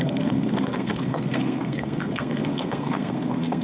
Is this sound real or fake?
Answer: fake